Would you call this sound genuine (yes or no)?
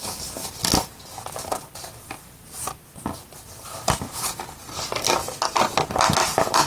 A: yes